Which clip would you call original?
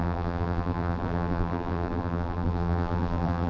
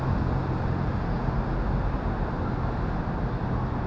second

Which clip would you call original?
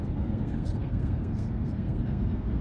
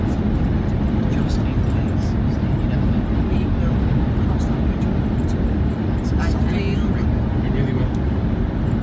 second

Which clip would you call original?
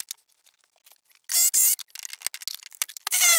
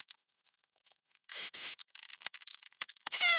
first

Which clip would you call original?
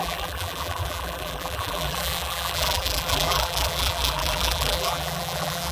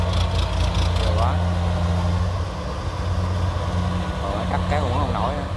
second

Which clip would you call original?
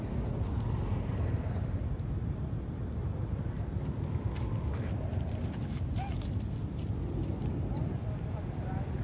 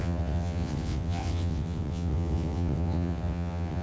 first